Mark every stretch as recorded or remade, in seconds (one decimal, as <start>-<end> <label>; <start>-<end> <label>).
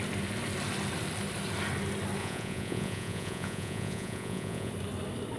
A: 0.0-2.2 recorded; 2.2-4.7 remade; 4.7-5.4 recorded